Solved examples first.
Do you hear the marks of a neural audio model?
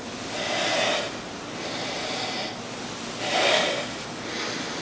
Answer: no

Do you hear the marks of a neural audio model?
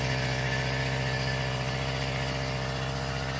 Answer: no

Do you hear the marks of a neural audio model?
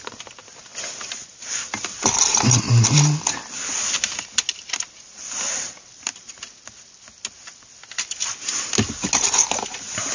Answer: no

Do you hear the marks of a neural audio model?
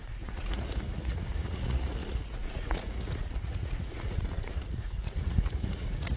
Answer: yes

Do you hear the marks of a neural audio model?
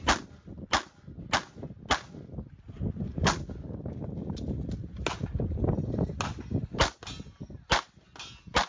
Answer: no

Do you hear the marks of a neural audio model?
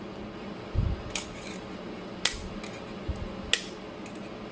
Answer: no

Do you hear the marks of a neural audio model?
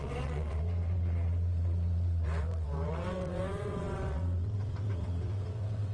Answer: yes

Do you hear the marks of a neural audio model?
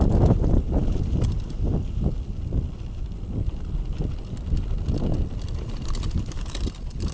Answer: no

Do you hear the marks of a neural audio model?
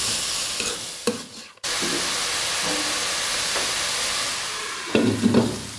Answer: no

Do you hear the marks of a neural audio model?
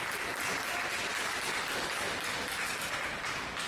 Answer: no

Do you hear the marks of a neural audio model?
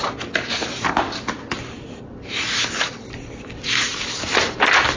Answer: no